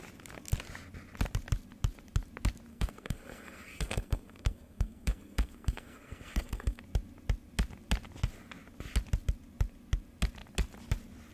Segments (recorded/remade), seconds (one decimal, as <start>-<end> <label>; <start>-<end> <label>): 0.0-2.7 recorded; 2.7-6.8 remade; 6.8-11.3 recorded